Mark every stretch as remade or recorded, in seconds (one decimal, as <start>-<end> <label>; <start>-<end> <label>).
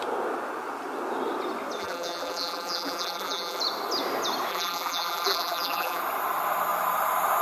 0.0-1.8 recorded; 1.8-3.6 remade; 3.6-4.5 recorded; 4.5-6.0 remade; 6.0-7.4 recorded